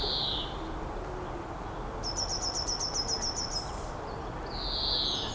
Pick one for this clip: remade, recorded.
recorded